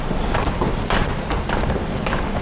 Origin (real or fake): real